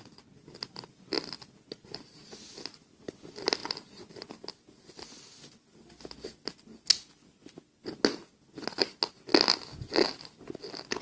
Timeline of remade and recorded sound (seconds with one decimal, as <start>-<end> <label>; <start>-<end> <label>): 0.0-11.0 recorded